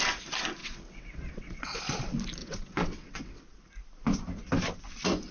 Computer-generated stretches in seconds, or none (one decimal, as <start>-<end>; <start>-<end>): 0.6-1.8; 2.4-3.6